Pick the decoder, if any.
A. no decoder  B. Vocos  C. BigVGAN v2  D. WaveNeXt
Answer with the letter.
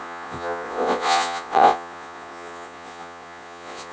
B